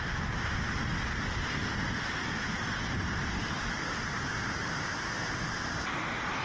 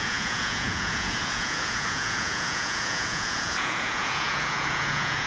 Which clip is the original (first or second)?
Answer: first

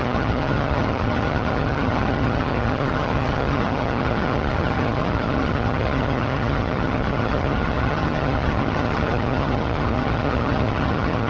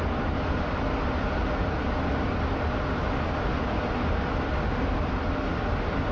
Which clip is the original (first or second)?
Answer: second